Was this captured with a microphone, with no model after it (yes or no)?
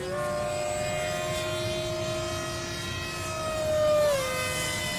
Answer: yes